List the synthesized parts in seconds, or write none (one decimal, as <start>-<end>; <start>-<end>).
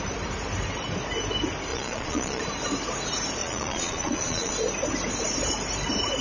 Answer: 1.7-2.4; 3.4-4.5